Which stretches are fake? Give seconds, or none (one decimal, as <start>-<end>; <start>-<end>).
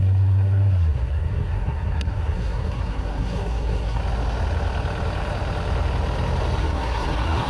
0.0-4.0; 6.6-7.5